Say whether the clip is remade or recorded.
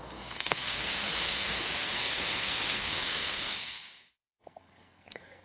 remade